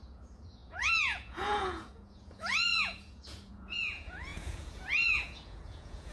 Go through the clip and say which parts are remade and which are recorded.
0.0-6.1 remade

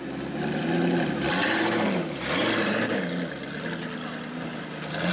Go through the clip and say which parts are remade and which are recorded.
0.0-1.4 recorded; 1.4-2.9 remade; 2.9-5.1 recorded